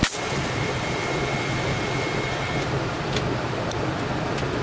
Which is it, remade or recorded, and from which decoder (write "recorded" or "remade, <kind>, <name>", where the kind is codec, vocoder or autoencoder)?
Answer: remade, vocoder, BigVGAN v2